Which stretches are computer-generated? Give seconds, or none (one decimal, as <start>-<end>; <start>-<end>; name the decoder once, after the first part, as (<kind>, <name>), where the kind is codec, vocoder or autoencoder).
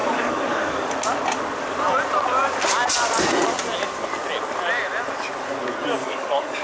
0.0-0.9 (codec, DAC); 6.0-6.6